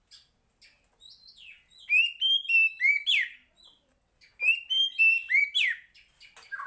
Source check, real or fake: real